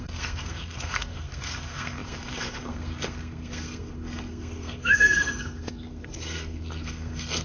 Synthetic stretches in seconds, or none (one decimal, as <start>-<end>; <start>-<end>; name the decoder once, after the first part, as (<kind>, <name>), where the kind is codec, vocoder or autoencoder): 0.0-7.4 (codec, SNAC)